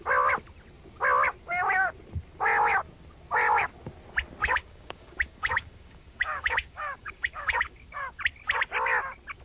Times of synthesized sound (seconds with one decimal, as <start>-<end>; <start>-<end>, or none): 4.4-8.2